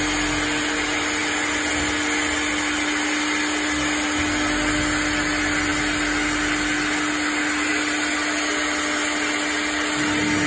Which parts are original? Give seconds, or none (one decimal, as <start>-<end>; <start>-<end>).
0.0-10.5